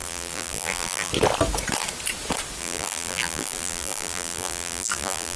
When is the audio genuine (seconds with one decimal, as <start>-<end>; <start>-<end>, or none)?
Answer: 1.1-2.6